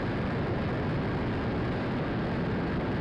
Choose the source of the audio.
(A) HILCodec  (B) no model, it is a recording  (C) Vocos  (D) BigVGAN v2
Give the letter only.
B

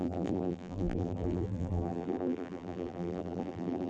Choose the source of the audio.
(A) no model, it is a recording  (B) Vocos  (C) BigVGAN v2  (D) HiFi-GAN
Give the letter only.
C